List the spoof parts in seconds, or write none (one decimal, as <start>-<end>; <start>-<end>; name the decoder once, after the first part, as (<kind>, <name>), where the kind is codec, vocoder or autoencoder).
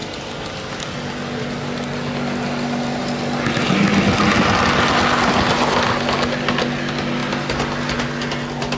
none